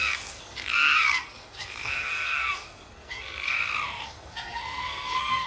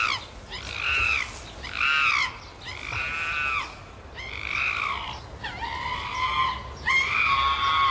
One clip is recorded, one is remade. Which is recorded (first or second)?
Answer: second